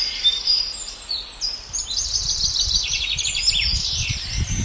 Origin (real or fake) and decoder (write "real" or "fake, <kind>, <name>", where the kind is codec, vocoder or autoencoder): fake, vocoder, BigVGAN v2